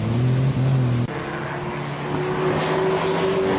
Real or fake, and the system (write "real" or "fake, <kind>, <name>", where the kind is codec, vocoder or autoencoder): real